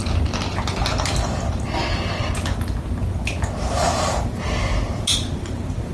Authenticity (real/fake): real